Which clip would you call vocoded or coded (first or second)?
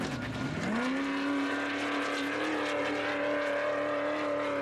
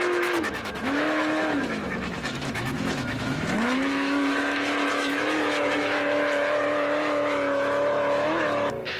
second